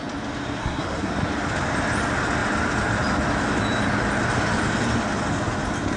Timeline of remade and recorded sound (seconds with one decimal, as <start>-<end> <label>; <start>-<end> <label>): 0.0-0.6 recorded; 0.6-1.1 remade; 1.1-6.0 recorded